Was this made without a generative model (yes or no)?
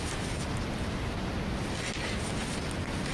yes